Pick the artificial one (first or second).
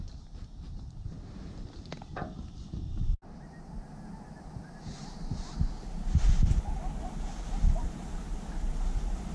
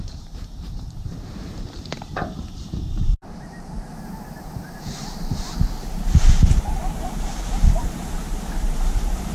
second